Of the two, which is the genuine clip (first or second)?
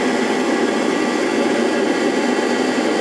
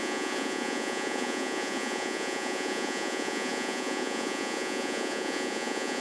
first